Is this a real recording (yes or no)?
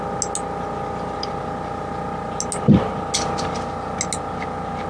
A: yes